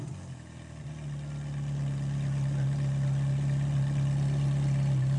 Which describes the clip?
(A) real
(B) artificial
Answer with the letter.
A